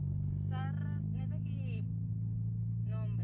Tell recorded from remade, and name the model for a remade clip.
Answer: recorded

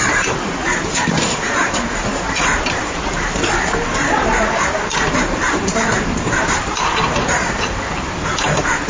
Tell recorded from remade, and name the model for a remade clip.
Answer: remade, vocoder, BigVGAN v2